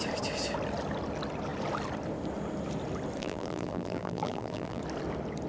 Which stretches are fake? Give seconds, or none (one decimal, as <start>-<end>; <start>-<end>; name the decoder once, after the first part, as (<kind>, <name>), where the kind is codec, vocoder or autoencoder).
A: 3.2-4.8 (vocoder, BigVGAN v2)

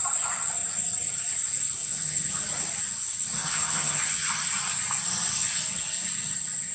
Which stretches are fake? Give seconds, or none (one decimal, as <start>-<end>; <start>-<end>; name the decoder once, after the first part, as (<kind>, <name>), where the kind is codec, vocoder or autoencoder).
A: 1.8-2.4 (vocoder, HiFi-GAN); 3.4-4.3

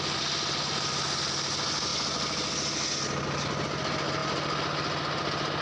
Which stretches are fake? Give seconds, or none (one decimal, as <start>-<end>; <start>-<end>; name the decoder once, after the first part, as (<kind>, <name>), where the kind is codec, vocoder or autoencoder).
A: none

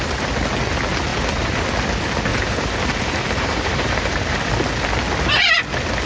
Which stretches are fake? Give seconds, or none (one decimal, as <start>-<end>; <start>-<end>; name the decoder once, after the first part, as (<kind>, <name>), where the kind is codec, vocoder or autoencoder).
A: 1.1-1.6 (vocoder, BigVGAN v2); 2.3-4.5

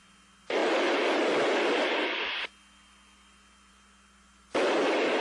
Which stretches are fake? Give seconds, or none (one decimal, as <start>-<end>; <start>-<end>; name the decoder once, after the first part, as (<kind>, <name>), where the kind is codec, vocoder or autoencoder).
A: none

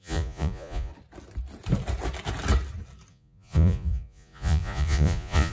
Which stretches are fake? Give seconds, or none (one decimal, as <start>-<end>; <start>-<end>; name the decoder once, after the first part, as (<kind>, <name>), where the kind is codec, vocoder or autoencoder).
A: 0.0-0.9 (vocoder, Vocos); 3.1-5.5

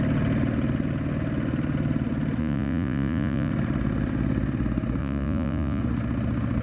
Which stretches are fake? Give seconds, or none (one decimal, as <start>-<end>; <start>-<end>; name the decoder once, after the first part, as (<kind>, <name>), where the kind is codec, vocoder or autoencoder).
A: 2.4-3.5 (vocoder, Vocos); 5.0-5.8